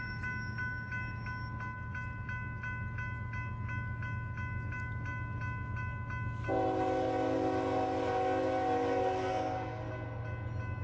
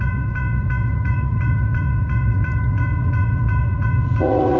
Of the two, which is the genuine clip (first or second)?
first